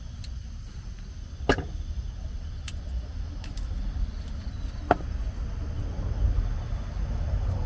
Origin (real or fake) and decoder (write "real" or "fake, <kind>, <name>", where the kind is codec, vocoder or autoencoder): real